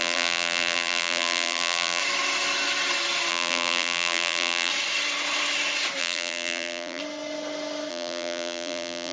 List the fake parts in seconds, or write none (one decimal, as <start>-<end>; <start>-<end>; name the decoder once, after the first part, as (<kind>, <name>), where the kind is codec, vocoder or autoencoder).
0.0-2.0 (vocoder, BigVGAN v2); 3.3-4.7; 6.0-7.0; 7.9-9.1